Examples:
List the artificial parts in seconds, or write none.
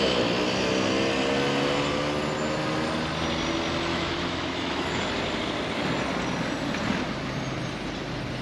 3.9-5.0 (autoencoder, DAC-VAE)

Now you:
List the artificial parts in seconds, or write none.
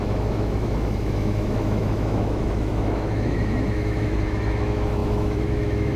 0.0-6.0 (autoencoder, DAC-VAE)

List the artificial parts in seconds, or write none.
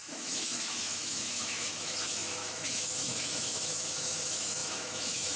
0.0-5.4 (autoencoder, DAC-VAE)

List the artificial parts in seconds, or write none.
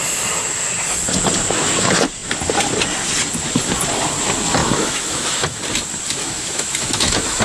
4.6-5.6 (autoencoder, DAC-VAE); 6.2-7.4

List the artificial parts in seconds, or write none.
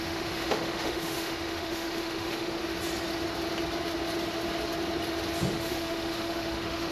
0.0-2.6 (autoencoder, DAC-VAE); 5.5-6.9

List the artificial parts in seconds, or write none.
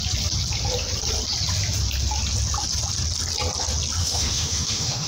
4.0-5.1 (autoencoder, DAC-VAE)